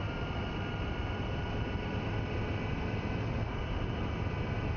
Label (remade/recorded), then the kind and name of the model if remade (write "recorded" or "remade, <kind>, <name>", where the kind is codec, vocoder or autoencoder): recorded